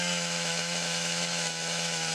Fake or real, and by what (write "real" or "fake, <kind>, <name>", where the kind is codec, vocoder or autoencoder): fake, autoencoder, DAC-VAE